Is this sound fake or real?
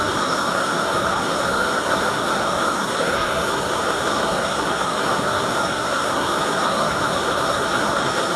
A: fake